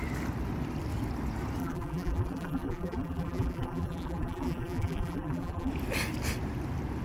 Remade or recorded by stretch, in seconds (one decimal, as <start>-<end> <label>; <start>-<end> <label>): 0.0-1.6 recorded; 1.6-5.7 remade; 5.7-7.0 recorded